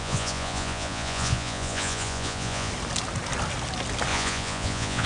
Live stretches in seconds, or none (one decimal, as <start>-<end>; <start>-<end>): 2.7-4.1